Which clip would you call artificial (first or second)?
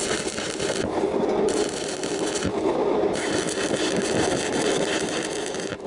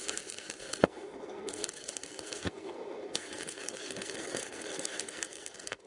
second